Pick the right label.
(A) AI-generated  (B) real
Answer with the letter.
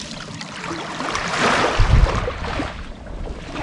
A